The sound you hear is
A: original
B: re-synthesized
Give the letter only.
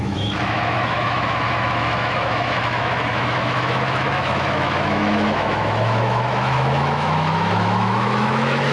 B